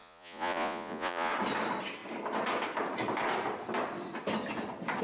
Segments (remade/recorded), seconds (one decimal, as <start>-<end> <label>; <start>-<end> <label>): 0.0-1.3 remade; 1.3-5.0 recorded